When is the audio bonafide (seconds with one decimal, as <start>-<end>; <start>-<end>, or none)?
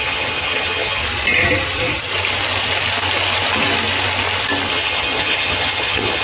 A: 1.0-4.7